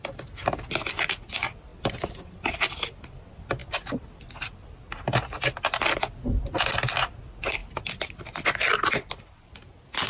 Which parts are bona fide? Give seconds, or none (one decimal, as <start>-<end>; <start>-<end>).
0.0-10.1